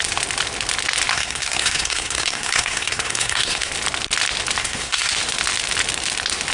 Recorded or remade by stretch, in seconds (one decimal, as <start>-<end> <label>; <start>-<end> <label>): 0.0-1.1 recorded; 1.1-3.7 remade; 3.7-4.6 recorded; 4.6-5.1 remade; 5.1-6.5 recorded